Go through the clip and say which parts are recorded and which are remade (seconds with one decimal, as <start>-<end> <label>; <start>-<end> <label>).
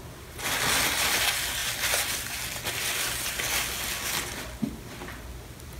0.0-5.8 recorded